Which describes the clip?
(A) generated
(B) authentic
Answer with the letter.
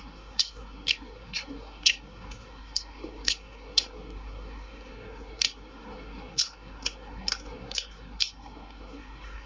A